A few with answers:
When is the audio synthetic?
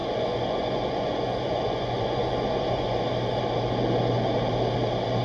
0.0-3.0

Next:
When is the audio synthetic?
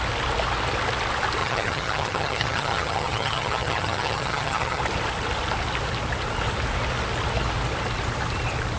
1.4-4.8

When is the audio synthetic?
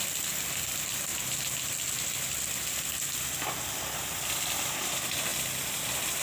0.0-5.3; 5.8-6.2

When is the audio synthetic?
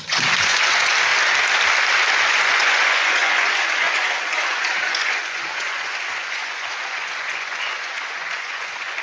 0.0-1.1; 2.1-9.0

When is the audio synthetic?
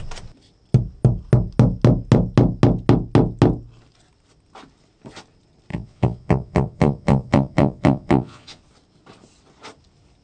5.7-8.6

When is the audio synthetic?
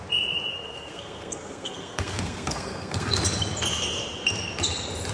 0.5-3.2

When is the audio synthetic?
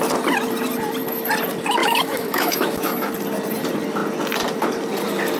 1.8-3.1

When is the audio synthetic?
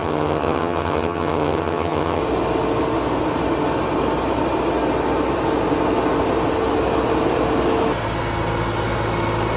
0.0-2.2